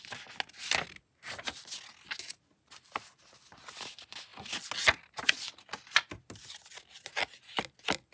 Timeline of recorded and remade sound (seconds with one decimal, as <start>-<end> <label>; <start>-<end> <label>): 0.0-8.1 recorded